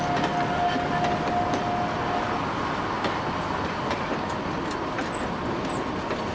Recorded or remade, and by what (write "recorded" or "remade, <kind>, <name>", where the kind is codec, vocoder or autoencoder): recorded